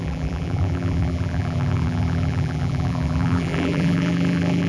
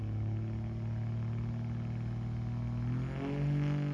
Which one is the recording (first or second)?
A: second